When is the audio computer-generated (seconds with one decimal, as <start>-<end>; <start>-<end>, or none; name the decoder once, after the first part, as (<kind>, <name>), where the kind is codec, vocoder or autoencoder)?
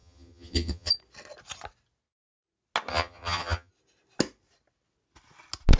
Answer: 0.0-0.9 (vocoder, HiFi-GAN); 2.9-3.7